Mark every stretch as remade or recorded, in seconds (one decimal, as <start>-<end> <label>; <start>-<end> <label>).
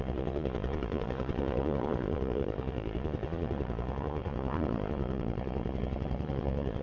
0.0-6.8 remade